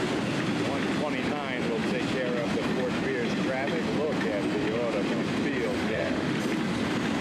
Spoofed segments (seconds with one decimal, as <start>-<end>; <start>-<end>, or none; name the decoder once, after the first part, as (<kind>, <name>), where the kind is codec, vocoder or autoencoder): 5.8-6.4 (autoencoder, DAC-VAE)